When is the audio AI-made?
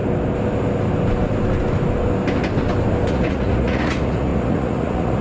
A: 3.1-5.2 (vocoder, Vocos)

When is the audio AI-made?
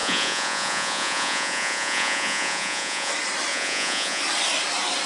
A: 0.0-3.1 (vocoder, Vocos); 3.5-4.2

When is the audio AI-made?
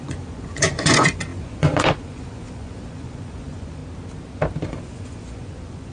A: 0.0-3.8 (vocoder, Vocos); 4.7-5.9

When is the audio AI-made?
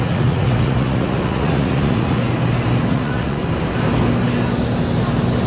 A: 0.0-2.2 (vocoder, Vocos); 2.9-3.4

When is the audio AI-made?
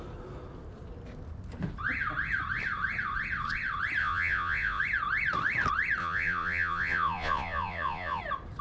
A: 4.0-4.8 (vocoder, Vocos); 6.0-8.2